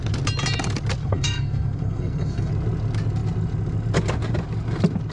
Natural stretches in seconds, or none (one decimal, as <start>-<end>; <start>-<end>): 0.0-1.0; 2.5-5.1